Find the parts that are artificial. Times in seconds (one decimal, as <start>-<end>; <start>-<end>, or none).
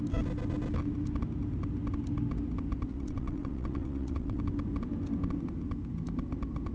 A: 2.9-4.4